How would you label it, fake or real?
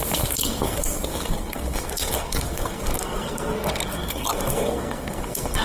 fake